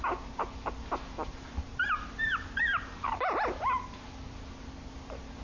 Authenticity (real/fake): real